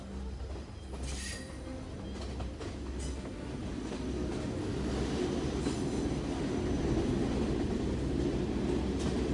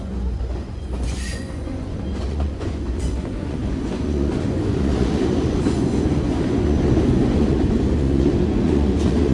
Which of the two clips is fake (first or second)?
second